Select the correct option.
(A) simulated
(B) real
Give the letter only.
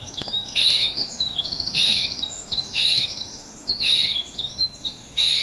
A